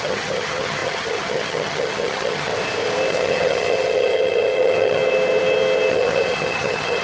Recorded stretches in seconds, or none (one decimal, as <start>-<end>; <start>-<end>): 2.5-3.1; 5.0-5.9